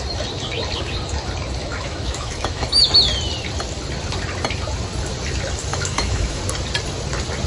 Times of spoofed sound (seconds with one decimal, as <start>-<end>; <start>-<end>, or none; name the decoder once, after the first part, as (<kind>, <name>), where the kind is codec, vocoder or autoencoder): 1.6-2.9 (autoencoder, DAC-VAE); 5.7-6.4